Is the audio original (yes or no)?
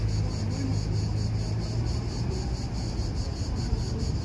yes